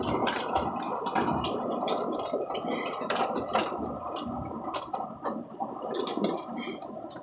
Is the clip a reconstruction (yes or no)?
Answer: no